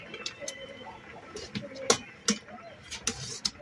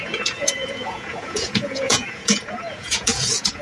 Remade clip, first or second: second